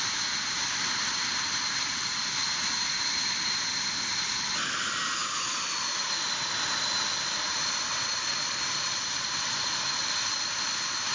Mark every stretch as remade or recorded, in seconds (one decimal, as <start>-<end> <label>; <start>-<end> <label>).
0.0-11.1 recorded